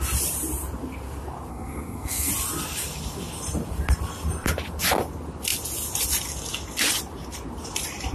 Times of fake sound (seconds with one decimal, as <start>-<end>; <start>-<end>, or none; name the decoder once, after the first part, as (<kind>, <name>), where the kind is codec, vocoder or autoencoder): 1.5-2.3 (codec, SNAC)